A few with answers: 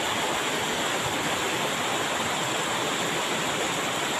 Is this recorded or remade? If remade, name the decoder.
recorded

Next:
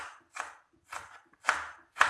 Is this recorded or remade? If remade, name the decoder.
recorded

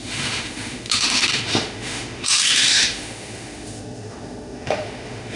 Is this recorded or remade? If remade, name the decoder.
remade, autoencoder, DAC-VAE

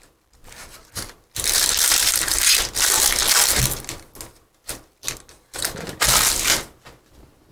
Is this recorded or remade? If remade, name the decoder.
recorded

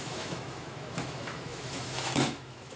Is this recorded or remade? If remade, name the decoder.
remade, autoencoder, DAC-VAE